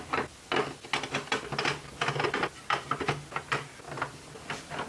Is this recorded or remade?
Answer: recorded